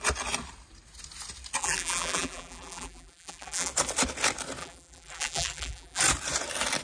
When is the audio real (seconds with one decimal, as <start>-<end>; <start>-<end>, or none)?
0.0-1.6; 3.7-4.6; 6.0-6.8